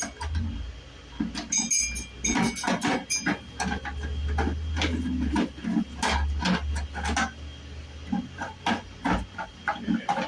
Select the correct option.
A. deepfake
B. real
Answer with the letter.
B